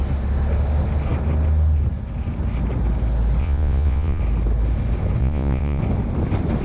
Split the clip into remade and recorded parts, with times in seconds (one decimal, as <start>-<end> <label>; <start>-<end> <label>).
0.0-3.4 recorded; 3.4-4.2 remade; 4.2-5.2 recorded; 5.2-5.8 remade; 5.8-6.6 recorded